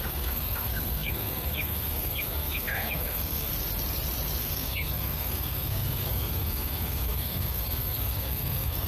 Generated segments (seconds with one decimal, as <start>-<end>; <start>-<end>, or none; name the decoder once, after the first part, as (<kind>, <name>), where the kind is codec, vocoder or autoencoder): 0.0-3.5 (codec, SNAC); 4.4-8.9